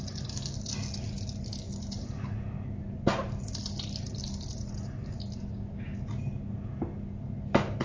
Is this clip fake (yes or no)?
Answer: no